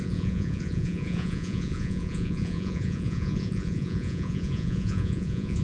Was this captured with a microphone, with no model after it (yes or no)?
no